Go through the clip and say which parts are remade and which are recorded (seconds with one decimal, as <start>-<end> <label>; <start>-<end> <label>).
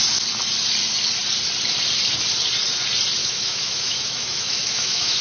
0.0-3.2 recorded; 3.2-5.2 remade